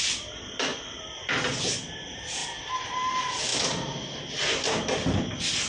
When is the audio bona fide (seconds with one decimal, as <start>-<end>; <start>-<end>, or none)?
0.0-0.7; 1.6-5.7